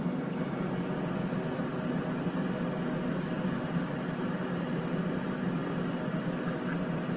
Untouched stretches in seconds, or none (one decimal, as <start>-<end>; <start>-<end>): 0.0-7.2